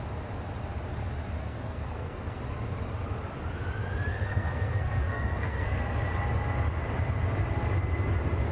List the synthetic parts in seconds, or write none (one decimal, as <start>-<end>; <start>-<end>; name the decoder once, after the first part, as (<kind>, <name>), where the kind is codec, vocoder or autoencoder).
1.4-2.4 (codec, SNAC); 4.1-5.8